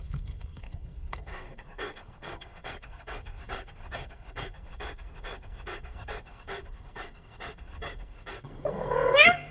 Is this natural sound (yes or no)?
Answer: no